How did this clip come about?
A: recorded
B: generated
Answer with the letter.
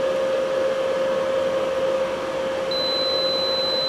A